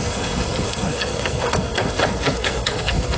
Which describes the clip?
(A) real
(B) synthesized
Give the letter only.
B